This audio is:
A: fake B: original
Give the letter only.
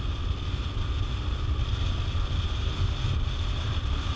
B